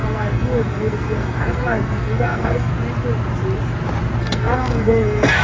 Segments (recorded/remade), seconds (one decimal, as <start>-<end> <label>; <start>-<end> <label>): 0.0-2.7 remade; 2.7-4.2 recorded; 4.2-5.4 remade